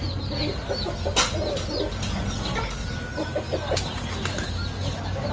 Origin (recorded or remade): recorded